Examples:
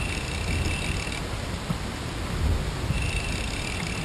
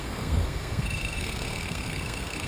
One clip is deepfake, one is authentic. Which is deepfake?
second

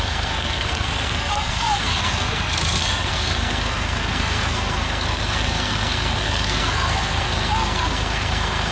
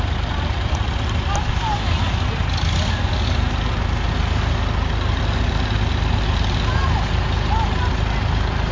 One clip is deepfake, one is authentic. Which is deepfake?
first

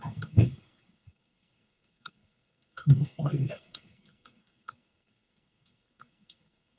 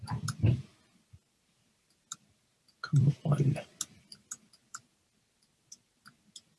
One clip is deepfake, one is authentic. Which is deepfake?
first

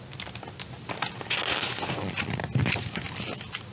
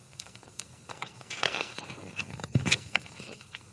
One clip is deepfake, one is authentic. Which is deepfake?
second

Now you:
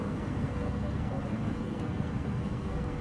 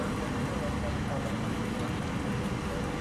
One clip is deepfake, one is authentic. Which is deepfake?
first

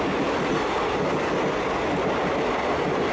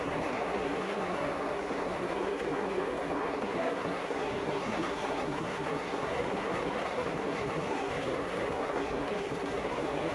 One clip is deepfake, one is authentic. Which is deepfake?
second